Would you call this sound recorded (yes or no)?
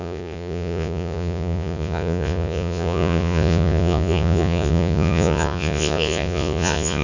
no